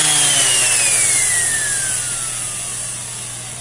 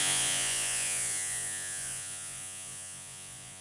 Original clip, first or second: first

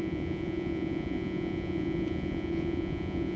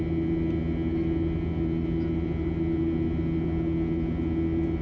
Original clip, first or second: second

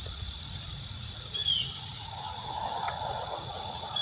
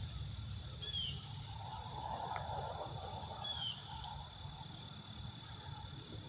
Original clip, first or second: second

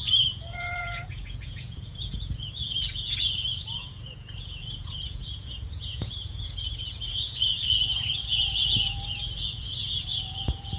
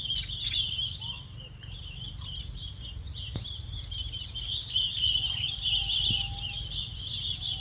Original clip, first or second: second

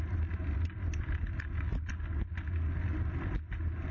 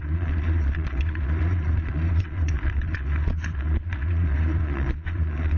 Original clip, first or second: first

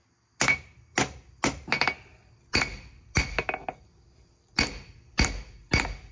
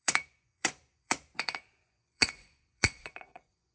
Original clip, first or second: first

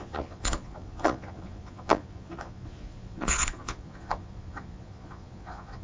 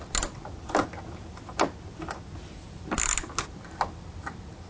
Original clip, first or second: second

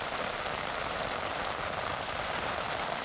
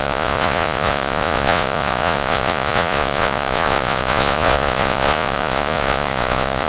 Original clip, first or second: first